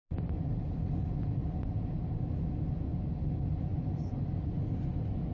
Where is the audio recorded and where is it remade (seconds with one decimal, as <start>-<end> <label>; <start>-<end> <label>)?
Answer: 0.0-5.3 recorded